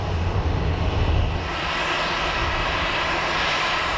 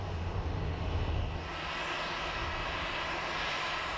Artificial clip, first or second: first